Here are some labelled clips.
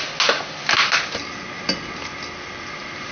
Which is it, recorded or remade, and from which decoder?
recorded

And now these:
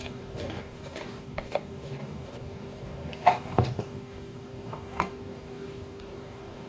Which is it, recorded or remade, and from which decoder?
remade, codec, DAC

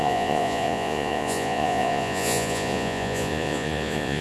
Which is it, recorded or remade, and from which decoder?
remade, vocoder, Vocos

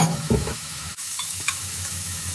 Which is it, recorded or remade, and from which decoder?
remade, autoencoder, DAC-VAE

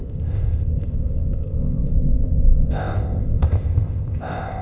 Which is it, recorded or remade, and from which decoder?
remade, codec, ZipCodec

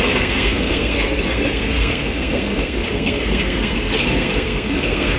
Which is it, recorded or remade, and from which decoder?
remade, codec, SNAC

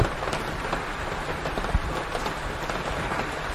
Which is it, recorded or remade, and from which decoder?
recorded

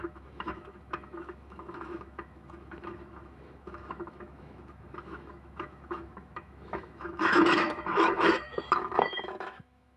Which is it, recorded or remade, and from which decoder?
remade, autoencoder, DAC-VAE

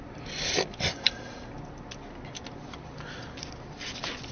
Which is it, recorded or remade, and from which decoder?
recorded